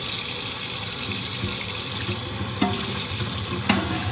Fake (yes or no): no